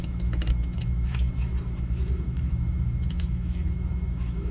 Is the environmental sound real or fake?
fake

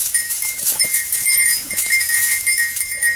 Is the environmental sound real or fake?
fake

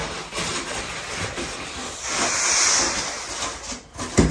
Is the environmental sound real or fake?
real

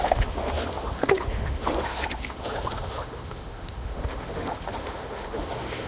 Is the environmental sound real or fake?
fake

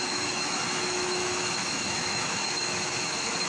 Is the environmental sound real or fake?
fake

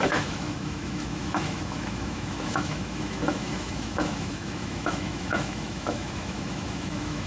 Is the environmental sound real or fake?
fake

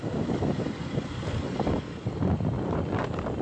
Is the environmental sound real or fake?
real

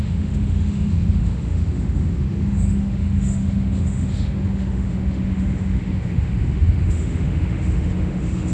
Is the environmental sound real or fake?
fake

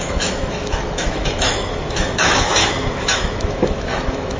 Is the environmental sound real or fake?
fake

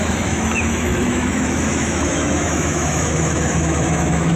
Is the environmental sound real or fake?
fake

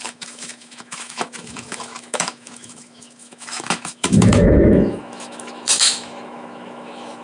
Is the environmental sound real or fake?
fake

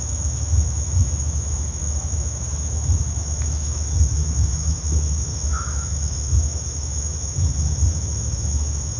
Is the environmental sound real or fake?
fake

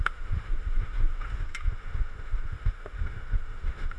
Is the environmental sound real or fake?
fake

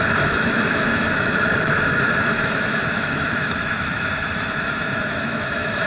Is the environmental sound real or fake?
fake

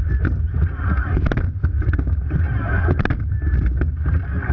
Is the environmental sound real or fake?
real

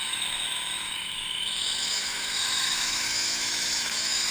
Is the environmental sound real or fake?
fake